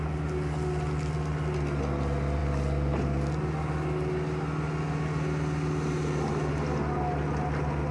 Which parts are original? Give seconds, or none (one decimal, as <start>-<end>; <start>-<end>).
0.0-7.9